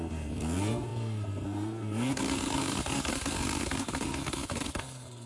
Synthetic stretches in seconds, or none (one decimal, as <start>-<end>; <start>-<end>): 0.0-5.3